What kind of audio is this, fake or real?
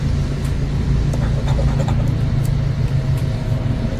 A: real